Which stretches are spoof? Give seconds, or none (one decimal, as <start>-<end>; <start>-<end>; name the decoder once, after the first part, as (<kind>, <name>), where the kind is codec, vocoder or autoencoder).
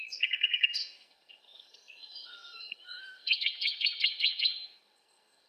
0.0-5.5 (codec, SNAC)